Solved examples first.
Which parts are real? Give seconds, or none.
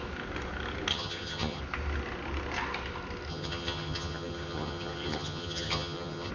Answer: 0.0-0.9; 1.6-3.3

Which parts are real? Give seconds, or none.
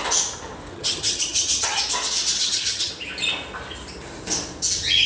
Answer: 0.0-0.7; 1.8-2.4; 2.9-5.1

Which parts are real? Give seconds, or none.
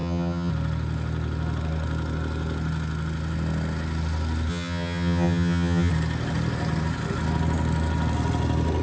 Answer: 0.5-4.5; 5.9-8.8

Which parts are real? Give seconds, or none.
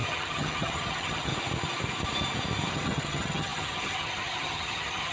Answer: 1.3-2.7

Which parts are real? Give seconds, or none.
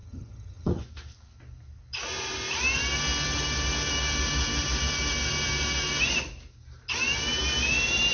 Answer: 0.8-8.1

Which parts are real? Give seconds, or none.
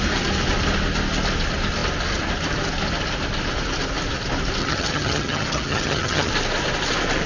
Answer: 0.0-4.6; 6.3-7.3